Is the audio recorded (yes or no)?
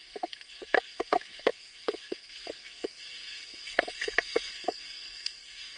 no